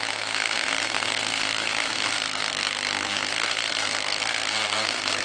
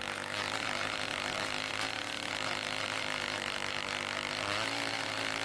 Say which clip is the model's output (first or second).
first